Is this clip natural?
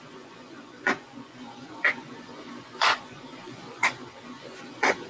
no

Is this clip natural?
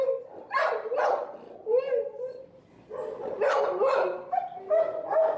yes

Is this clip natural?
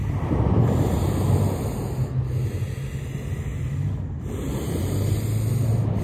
yes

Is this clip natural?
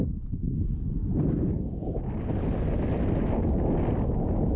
yes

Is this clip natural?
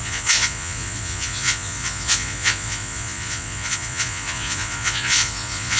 no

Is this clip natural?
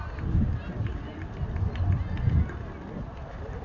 yes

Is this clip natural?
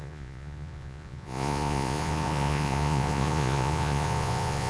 no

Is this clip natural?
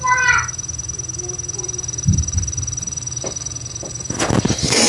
yes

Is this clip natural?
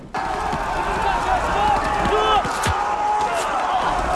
yes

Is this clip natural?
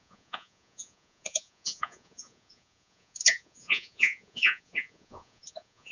no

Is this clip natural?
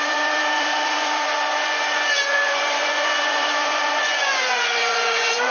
no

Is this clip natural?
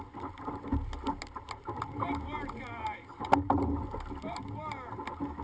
yes